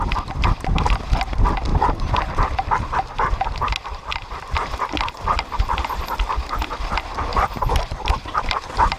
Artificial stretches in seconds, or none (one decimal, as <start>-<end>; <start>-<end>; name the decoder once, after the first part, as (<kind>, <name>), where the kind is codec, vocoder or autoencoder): 1.7-2.2 (vocoder, BigVGAN v2); 7.3-8.2